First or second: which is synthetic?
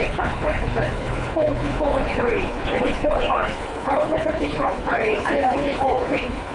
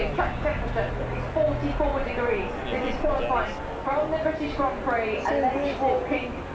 first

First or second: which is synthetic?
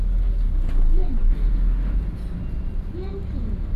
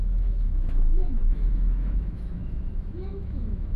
second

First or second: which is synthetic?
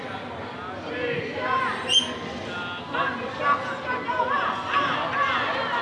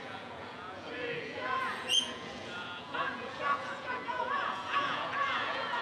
second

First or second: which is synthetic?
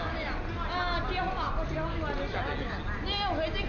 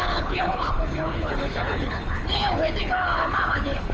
second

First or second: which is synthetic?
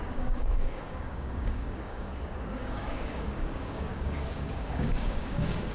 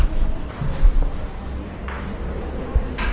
first